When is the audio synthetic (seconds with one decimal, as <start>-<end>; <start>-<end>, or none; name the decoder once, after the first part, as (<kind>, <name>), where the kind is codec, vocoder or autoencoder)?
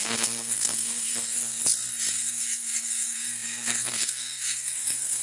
0.0-1.6 (codec, SNAC); 2.1-5.2